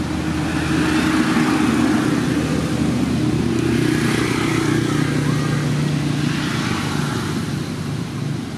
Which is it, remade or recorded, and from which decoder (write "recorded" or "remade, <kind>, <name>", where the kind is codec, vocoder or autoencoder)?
recorded